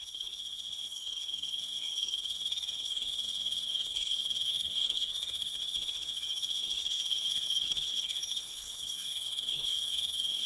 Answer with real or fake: fake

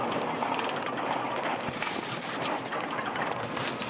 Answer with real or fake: real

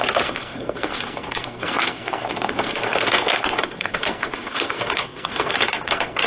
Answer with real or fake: fake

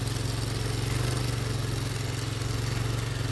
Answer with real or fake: real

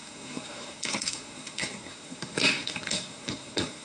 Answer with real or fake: fake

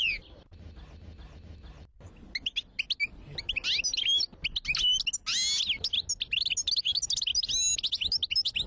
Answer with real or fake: real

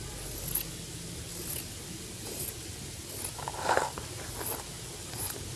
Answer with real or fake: real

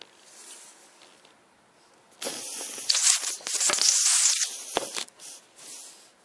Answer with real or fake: real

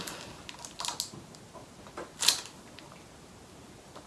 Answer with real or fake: real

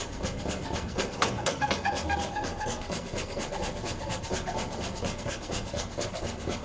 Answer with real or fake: fake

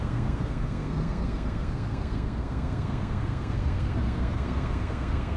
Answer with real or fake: fake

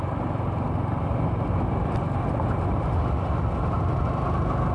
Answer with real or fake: real